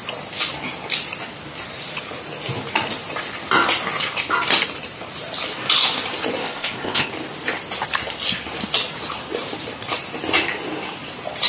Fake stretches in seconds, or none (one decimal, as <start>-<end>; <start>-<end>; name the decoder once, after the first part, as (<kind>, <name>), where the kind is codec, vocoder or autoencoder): 6.4-7.1 (codec, ZipCodec)